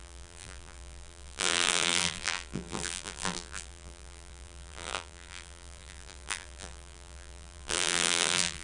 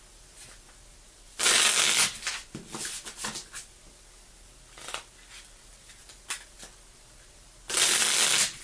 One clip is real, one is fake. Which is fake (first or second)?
first